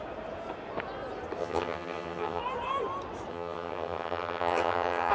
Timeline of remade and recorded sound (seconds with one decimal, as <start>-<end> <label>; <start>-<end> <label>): 0.0-1.4 recorded; 1.4-2.4 remade; 2.4-3.3 recorded; 3.3-5.1 remade